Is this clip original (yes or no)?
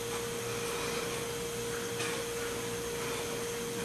yes